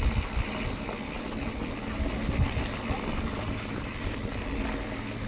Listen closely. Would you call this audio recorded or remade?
recorded